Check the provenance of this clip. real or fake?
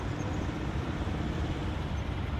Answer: fake